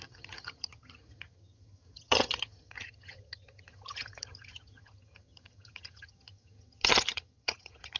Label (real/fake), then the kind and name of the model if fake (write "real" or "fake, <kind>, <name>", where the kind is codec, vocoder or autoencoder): fake, vocoder, HiFi-GAN